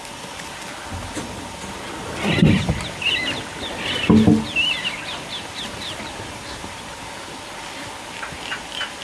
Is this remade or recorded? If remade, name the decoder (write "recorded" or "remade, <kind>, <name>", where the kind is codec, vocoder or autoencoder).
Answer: recorded